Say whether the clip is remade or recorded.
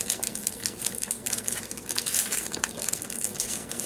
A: remade